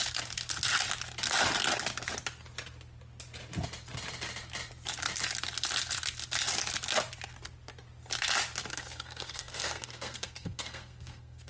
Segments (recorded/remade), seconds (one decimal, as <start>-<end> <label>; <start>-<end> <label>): 0.0-8.7 recorded; 8.7-11.5 remade